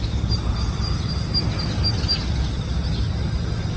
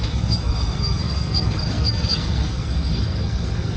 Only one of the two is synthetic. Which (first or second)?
second